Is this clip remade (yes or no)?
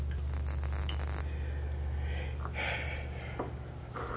no